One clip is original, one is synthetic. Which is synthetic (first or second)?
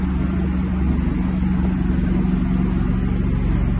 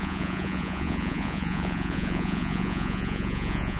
second